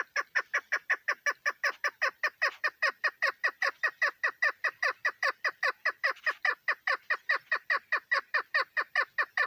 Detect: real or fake real